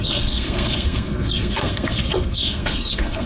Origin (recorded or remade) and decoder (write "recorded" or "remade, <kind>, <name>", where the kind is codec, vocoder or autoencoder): remade, codec, SNAC